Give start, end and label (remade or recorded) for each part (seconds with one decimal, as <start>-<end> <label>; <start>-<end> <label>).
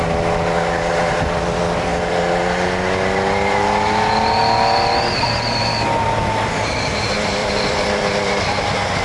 0.0-7.4 recorded; 7.4-8.3 remade; 8.3-9.0 recorded